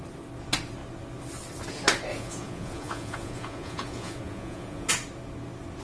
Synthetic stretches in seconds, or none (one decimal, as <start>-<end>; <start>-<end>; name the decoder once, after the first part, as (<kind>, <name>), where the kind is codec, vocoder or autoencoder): 2.1-4.9 (vocoder, Vocos)